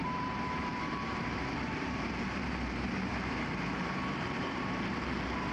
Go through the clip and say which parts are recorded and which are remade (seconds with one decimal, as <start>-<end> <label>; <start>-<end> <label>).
0.0-5.5 remade